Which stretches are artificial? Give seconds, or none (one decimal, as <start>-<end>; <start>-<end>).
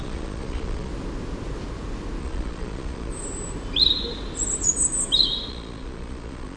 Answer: 0.0-0.9; 2.2-3.1; 5.5-6.6